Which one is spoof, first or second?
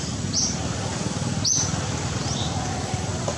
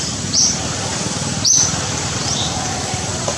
second